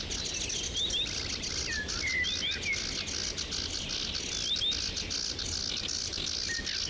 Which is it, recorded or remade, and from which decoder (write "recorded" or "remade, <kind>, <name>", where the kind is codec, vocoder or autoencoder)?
recorded